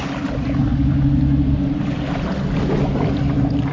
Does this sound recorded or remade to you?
recorded